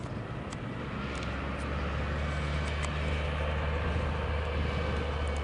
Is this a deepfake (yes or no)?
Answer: no